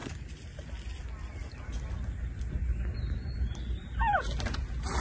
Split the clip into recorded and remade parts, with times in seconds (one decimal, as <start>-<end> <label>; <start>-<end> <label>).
0.0-5.0 recorded